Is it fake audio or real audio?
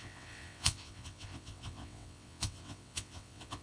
fake